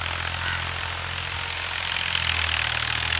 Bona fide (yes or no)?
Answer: yes